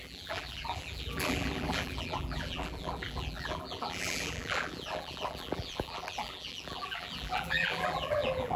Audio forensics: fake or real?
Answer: fake